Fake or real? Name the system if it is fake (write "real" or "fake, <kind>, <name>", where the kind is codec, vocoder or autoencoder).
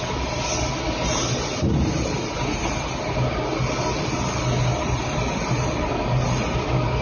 real